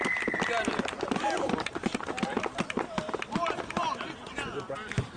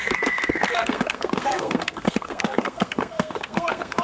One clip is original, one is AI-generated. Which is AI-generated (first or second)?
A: second